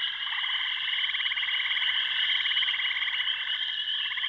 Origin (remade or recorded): recorded